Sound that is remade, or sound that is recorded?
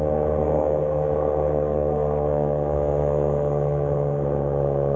remade